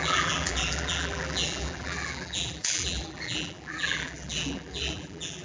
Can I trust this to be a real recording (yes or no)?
no